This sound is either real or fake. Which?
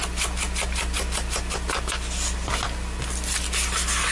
real